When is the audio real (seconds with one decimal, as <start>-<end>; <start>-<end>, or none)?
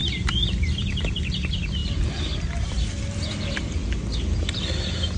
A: 0.0-5.2